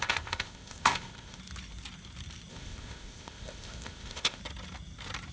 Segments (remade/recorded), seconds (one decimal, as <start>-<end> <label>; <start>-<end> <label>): 0.0-1.4 remade; 1.4-2.5 recorded; 2.5-4.4 remade; 4.4-5.3 recorded